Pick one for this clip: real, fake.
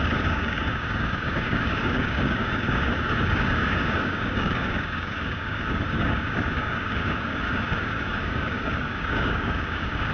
fake